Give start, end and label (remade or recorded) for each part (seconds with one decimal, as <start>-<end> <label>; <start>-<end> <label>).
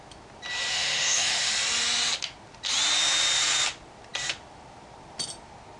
0.0-0.7 recorded; 0.7-1.5 remade; 1.5-5.8 recorded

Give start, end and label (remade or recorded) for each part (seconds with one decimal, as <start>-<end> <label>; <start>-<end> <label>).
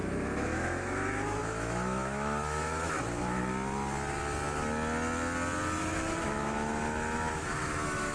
0.0-3.4 remade; 3.4-5.8 recorded; 5.8-8.1 remade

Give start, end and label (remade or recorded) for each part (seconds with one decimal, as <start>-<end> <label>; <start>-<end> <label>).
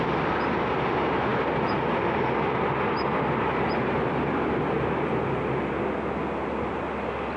0.0-7.4 recorded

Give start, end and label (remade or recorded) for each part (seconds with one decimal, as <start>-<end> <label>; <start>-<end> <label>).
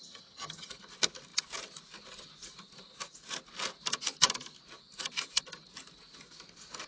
0.0-0.7 remade; 0.7-6.9 recorded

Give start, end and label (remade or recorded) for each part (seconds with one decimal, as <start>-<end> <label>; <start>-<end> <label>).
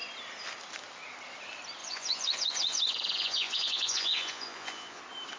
0.0-1.8 recorded; 1.8-5.0 remade; 5.0-5.4 recorded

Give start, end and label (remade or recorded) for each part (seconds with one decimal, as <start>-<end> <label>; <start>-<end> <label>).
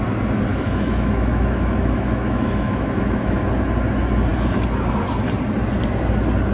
0.0-0.5 recorded; 0.5-3.4 remade; 3.4-6.5 recorded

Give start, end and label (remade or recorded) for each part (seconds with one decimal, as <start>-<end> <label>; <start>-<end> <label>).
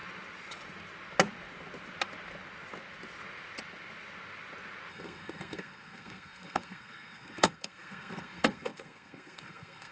0.0-4.9 recorded; 4.9-9.9 remade